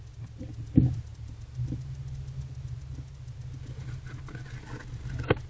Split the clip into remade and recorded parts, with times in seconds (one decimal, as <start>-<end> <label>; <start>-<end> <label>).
0.0-5.5 recorded